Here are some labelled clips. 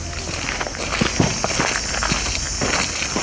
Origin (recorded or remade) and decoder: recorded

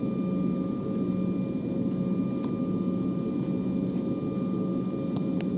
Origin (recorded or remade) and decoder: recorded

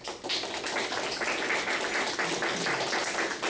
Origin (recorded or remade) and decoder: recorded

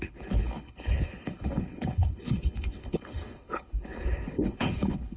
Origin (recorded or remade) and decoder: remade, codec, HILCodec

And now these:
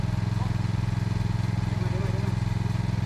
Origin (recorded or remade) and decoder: recorded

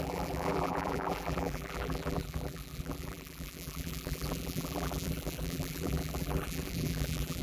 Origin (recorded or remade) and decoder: remade, vocoder, BigVGAN v2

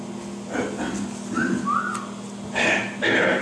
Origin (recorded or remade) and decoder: recorded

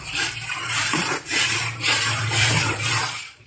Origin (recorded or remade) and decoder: remade, vocoder, BigVGAN v2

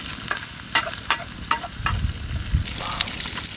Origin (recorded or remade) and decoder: recorded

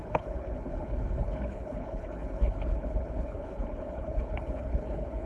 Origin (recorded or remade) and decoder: remade, codec, HILCodec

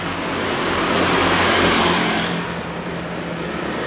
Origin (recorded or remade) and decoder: recorded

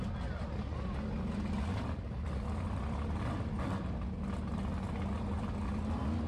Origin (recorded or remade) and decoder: recorded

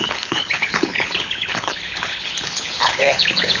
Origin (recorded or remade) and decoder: remade, codec, HILCodec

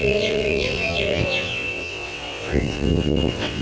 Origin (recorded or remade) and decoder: remade, vocoder, WaveNeXt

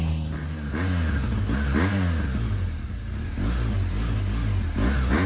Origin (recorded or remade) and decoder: recorded